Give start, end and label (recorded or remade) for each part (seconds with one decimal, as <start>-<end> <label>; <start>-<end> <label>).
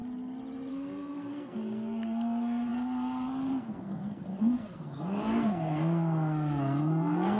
0.0-0.7 recorded; 0.7-7.4 remade